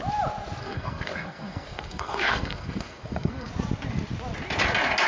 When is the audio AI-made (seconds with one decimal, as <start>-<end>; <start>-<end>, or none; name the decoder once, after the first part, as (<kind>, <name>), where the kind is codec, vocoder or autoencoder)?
0.6-3.5 (codec, SNAC)